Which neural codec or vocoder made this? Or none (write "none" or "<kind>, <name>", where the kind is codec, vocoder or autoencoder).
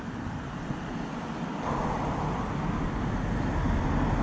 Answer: none